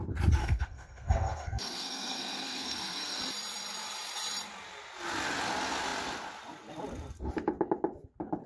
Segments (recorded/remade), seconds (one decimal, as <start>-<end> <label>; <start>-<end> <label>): 0.0-0.4 recorded; 0.4-3.2 remade; 3.2-8.5 recorded